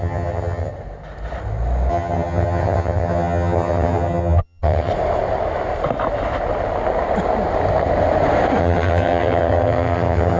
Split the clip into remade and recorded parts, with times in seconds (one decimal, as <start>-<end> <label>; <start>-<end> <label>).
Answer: 0.0-0.7 remade; 0.7-1.9 recorded; 1.9-4.9 remade; 4.9-8.6 recorded; 8.6-10.4 remade